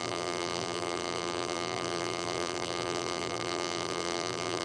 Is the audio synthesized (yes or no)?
yes